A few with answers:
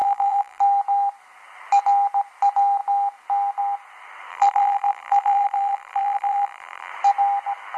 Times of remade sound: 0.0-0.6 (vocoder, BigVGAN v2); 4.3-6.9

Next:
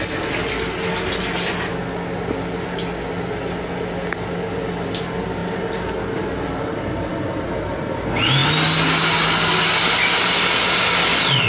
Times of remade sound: none

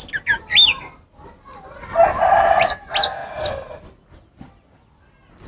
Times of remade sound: none

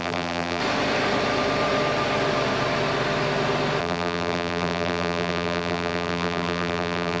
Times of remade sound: 0.0-0.6 (vocoder, BigVGAN v2); 3.8-7.2

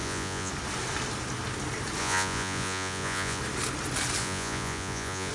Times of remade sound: 0.0-0.5 (vocoder, Vocos); 2.0-3.4; 4.2-5.3

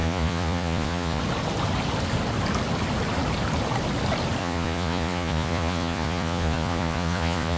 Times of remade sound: 0.0-1.2 (vocoder, Vocos); 4.4-7.6

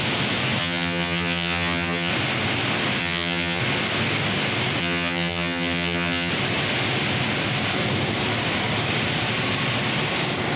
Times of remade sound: 0.6-2.1 (vocoder, HiFi-GAN); 3.0-3.6; 4.8-6.3

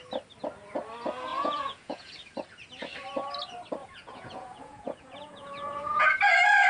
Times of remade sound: 1.3-2.1 (vocoder, Vocos); 3.8-6.2